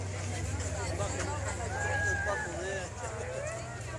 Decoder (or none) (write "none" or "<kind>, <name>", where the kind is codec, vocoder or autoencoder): none